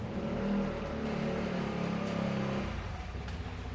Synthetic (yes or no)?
no